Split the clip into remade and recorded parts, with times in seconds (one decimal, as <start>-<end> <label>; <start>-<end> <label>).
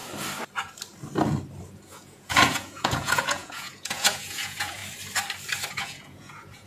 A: 0.0-1.9 recorded; 1.9-4.8 remade; 4.8-5.7 recorded; 5.7-6.7 remade